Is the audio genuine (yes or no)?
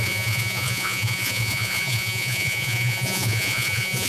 no